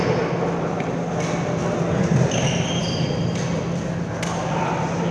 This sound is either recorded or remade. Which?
recorded